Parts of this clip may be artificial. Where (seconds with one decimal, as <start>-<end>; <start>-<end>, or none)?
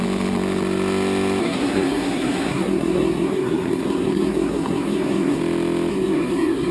1.4-5.4; 5.9-6.7